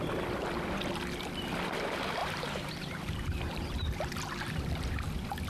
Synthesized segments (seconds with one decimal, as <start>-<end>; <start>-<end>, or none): 2.2-4.6